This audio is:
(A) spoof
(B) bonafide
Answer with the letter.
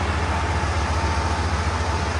B